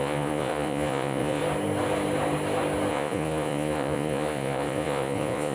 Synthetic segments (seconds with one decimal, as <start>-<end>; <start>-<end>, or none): 0.0-1.4; 2.9-5.5